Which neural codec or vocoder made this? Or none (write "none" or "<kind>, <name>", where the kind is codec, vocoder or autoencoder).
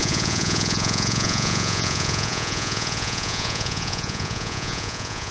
vocoder, Vocos